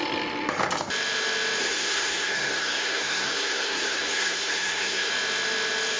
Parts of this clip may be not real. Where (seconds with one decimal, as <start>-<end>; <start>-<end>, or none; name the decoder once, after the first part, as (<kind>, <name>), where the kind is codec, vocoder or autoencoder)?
1.6-5.1 (codec, SNAC)